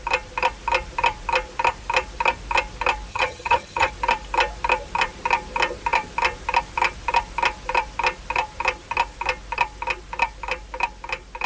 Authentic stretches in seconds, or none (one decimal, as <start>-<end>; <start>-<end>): 0.0-3.1; 3.9-11.5